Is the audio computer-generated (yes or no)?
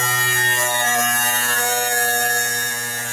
no